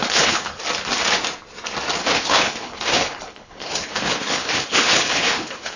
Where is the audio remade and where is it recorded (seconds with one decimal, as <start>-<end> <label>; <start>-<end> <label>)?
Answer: 0.0-0.6 remade; 0.6-2.0 recorded; 2.0-5.8 remade